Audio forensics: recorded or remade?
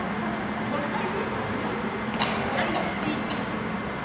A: recorded